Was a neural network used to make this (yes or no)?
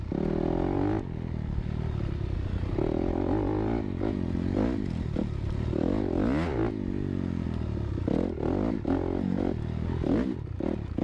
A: no